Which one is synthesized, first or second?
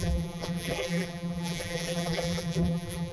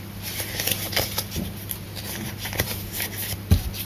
first